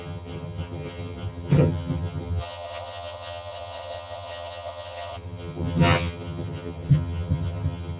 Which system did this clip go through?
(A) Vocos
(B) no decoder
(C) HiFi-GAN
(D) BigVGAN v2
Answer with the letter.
C